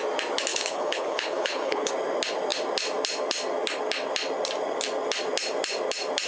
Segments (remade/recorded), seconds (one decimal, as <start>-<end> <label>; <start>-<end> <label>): 0.0-0.5 recorded; 0.5-1.9 remade; 1.9-6.3 recorded